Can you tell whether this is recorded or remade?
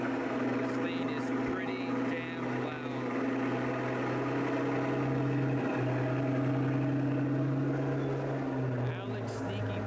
recorded